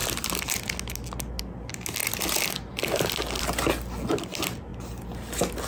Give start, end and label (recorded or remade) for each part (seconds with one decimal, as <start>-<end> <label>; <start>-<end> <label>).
0.0-5.7 recorded